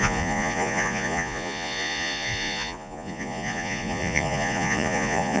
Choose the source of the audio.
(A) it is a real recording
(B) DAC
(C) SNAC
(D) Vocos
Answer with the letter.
D